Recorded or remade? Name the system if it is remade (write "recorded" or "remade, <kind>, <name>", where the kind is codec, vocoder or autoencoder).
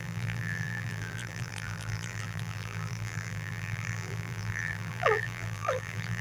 remade, vocoder, BigVGAN v2